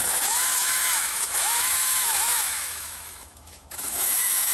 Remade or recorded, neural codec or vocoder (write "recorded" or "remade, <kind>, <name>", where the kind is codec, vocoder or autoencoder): remade, autoencoder, DAC-VAE